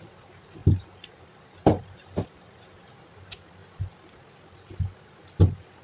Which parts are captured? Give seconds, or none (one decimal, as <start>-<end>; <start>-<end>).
0.0-0.6; 3.0-5.8